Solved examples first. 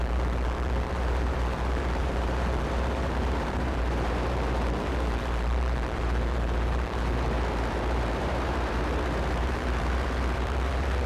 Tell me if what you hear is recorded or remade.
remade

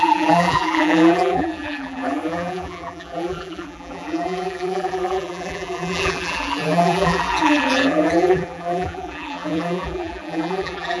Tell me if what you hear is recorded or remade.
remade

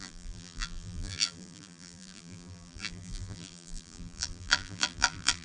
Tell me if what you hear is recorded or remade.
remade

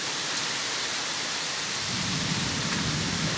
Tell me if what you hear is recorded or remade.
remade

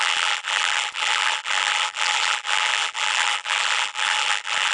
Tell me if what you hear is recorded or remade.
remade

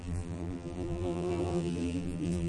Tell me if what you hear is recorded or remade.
remade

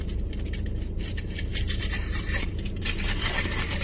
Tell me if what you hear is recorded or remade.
remade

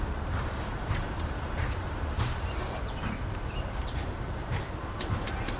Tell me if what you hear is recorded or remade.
remade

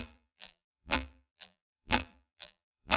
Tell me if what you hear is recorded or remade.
remade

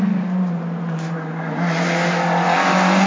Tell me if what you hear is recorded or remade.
recorded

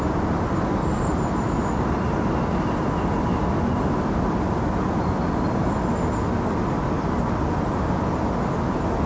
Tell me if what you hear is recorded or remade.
recorded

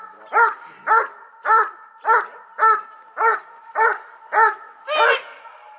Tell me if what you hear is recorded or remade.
recorded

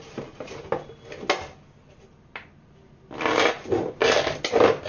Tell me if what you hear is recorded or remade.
recorded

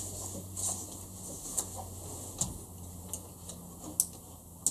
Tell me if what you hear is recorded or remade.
recorded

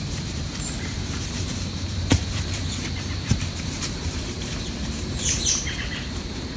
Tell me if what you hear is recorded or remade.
remade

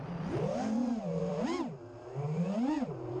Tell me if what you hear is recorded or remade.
remade